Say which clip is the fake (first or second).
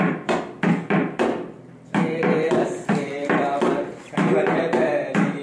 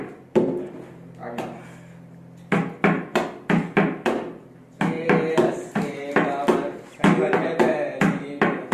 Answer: first